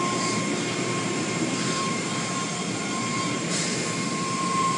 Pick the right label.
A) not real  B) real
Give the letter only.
A